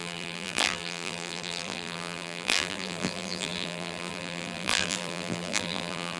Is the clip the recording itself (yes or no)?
no